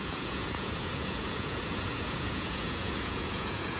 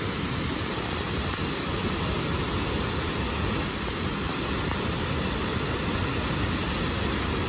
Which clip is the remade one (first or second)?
first